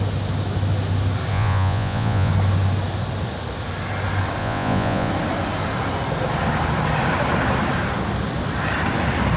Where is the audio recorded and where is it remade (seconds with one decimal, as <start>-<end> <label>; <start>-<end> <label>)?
0.0-1.3 recorded; 1.3-2.3 remade; 2.3-4.4 recorded; 4.4-5.1 remade; 5.1-9.4 recorded